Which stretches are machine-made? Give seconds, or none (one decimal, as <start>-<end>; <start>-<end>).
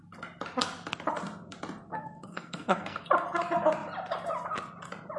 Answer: 1.9-3.1